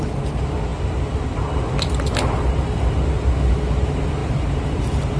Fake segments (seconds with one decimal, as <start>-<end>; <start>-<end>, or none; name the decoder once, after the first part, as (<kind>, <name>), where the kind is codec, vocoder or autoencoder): none